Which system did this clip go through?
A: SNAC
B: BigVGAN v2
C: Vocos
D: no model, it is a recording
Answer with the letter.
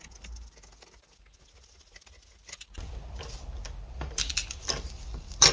D